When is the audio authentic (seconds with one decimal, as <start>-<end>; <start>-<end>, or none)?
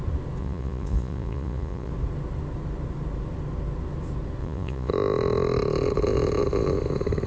0.0-0.4; 1.9-4.4; 4.9-7.3